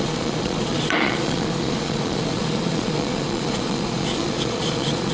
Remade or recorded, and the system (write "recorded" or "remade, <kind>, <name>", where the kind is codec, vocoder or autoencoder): remade, vocoder, Vocos